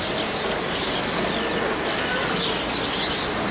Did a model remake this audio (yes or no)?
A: no